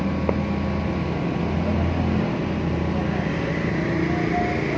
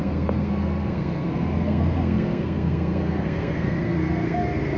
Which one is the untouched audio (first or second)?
first